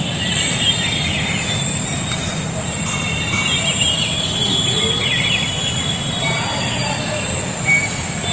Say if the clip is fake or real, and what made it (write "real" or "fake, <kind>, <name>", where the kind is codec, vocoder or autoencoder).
real